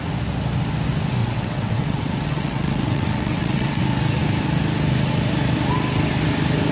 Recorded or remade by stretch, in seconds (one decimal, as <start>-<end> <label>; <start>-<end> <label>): 0.0-1.2 recorded; 1.2-3.8 remade; 3.8-6.7 recorded